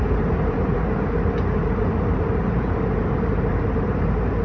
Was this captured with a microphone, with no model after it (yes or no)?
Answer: no